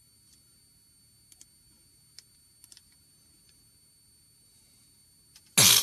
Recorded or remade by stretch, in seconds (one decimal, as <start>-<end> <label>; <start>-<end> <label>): 0.0-5.8 recorded